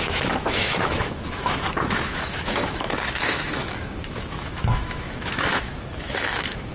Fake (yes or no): yes